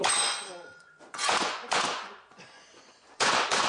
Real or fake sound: fake